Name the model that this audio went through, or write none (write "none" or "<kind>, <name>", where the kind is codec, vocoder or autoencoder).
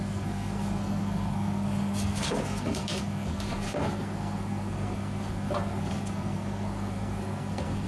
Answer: codec, SNAC